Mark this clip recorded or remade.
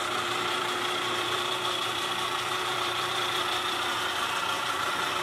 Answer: remade